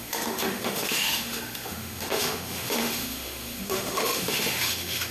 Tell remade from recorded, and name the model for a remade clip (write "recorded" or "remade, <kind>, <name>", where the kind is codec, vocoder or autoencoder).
remade, autoencoder, DAC-VAE